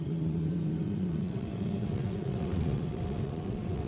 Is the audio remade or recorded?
remade